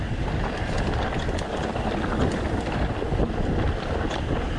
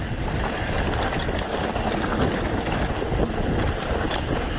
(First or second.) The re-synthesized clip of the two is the first